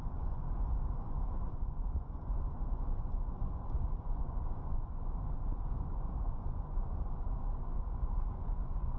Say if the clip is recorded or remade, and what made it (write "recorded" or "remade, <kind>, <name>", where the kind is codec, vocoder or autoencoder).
remade, vocoder, Vocos